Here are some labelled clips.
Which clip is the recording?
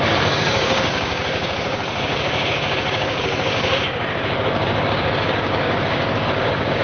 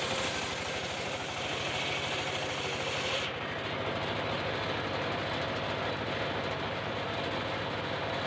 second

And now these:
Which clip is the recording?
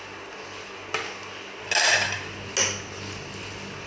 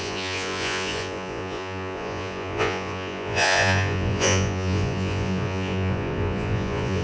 first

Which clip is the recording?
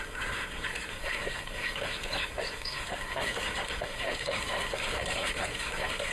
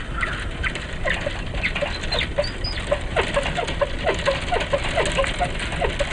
second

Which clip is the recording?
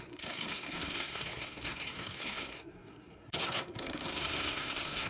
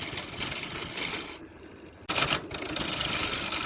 second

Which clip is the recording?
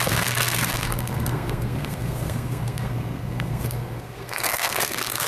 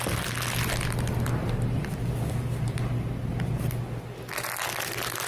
second